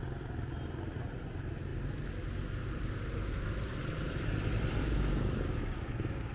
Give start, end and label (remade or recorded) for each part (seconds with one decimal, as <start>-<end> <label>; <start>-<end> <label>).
0.0-4.8 recorded; 4.8-6.3 remade